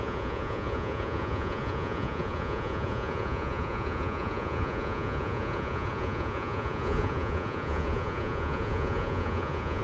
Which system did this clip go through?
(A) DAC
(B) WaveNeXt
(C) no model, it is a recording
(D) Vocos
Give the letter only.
D